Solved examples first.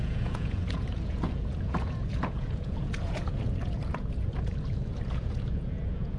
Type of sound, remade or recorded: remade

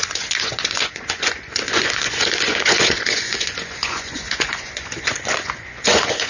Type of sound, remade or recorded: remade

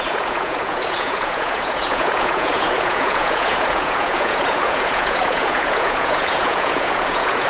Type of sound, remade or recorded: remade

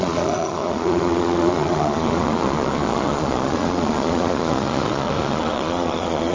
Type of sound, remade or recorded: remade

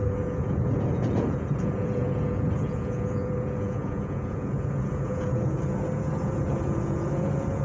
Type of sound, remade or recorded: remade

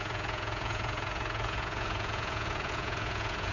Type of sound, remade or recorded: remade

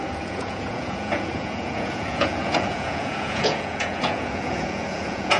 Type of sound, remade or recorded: remade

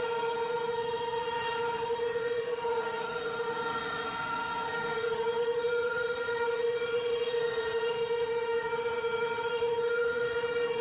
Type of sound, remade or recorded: remade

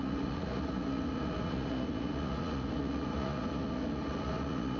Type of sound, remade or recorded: remade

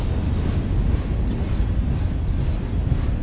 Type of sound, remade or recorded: recorded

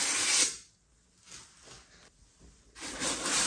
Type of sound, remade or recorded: recorded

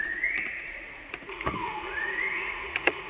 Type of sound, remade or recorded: remade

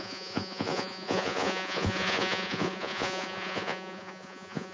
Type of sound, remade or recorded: remade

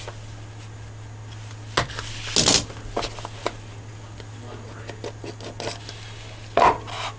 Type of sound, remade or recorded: recorded